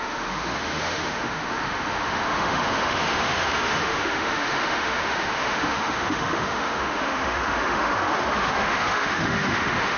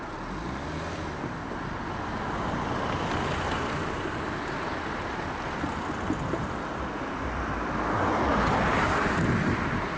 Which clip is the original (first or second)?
second